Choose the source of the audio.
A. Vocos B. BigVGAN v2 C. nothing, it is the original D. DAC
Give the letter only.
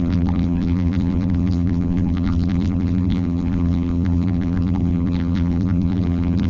B